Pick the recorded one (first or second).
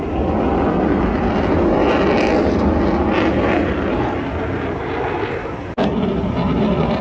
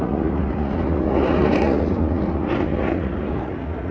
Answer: first